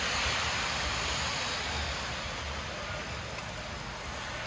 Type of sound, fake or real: real